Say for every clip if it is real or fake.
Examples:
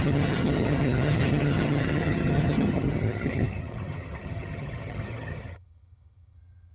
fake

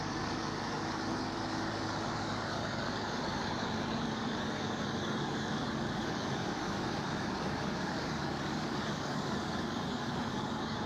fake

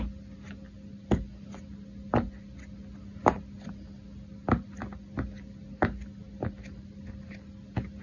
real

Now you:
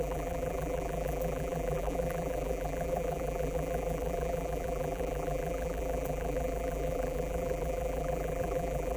fake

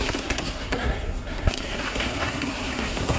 fake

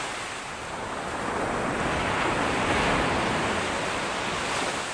real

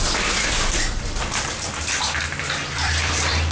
fake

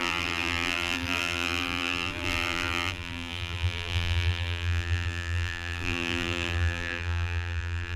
fake